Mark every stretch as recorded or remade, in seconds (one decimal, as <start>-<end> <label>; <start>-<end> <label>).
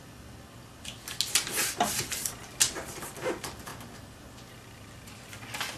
0.0-5.8 recorded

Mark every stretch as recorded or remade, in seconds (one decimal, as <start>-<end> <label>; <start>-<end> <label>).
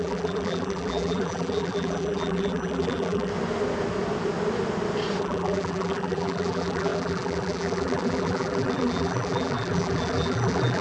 0.0-3.3 remade; 3.3-5.2 recorded; 5.2-10.8 remade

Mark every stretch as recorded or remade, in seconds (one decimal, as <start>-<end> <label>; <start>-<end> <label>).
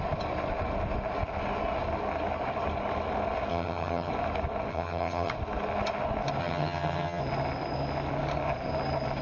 0.0-3.5 recorded; 3.5-4.1 remade; 4.1-4.7 recorded; 4.7-5.3 remade; 5.3-6.4 recorded; 6.4-7.2 remade; 7.2-9.2 recorded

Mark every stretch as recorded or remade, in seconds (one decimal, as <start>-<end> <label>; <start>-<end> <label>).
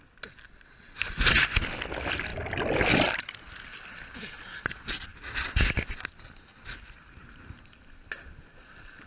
0.0-9.1 recorded